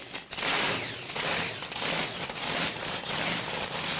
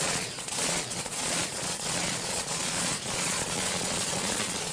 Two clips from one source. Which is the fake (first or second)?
second